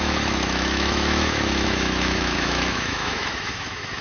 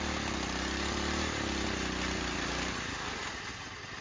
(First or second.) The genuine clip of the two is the second